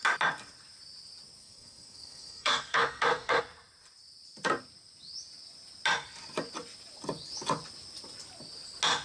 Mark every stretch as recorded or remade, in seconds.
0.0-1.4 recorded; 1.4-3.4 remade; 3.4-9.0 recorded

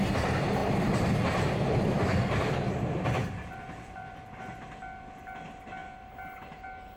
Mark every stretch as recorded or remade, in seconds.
0.0-0.6 recorded; 0.6-4.4 remade; 4.4-5.8 recorded; 5.8-7.0 remade

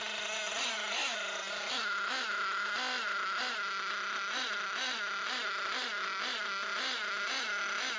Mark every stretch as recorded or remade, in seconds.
0.0-8.0 recorded

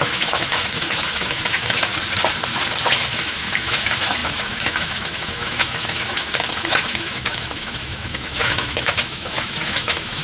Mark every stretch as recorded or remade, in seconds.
0.0-1.9 remade; 1.9-3.1 recorded; 3.1-10.2 remade